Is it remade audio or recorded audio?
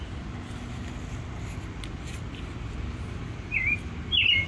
recorded